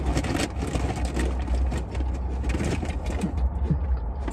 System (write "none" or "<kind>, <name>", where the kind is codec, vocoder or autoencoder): none